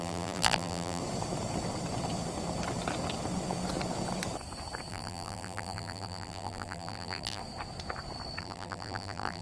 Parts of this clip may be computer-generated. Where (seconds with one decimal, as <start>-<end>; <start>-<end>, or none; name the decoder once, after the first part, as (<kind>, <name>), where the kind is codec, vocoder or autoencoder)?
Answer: 0.0-1.0 (vocoder, BigVGAN v2); 4.9-7.4; 8.4-9.4